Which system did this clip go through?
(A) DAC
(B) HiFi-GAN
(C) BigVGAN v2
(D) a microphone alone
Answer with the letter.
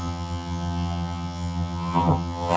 B